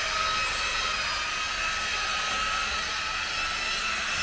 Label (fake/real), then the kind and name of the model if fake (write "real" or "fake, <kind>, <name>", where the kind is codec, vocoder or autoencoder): real